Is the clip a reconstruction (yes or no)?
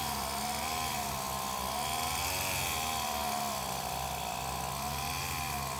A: no